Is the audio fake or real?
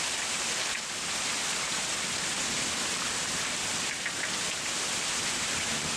real